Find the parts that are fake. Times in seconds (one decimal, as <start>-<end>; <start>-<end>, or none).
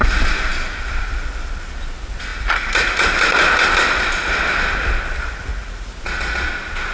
5.5-6.0